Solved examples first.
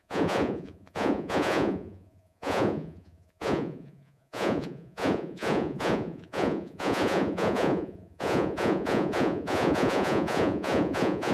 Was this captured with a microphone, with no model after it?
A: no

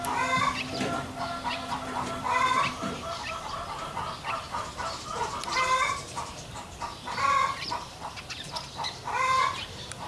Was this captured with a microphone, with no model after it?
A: no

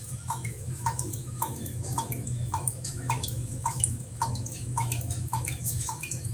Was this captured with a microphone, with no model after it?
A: no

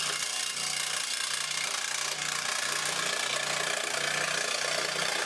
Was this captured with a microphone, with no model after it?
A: yes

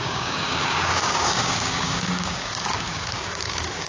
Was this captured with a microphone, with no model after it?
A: no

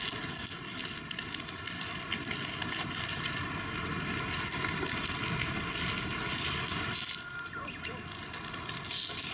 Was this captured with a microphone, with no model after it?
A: yes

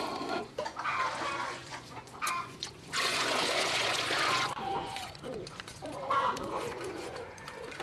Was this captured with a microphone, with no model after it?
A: no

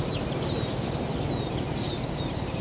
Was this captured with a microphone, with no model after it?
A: yes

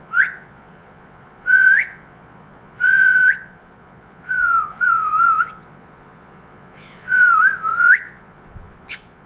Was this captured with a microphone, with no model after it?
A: no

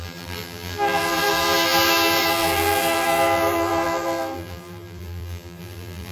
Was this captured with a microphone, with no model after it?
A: no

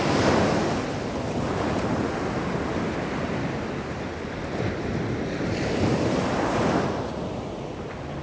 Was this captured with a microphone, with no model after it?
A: yes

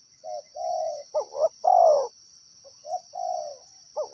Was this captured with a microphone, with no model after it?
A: yes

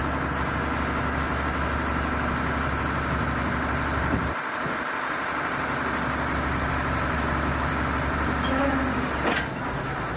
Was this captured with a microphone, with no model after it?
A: yes